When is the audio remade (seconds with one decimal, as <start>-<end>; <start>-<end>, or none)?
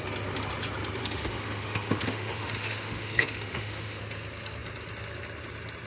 1.0-4.0